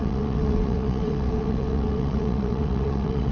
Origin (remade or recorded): remade